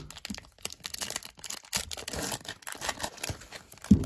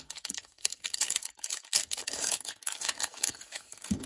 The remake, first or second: second